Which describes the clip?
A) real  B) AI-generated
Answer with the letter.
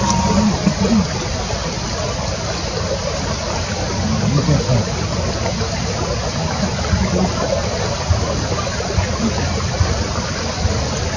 A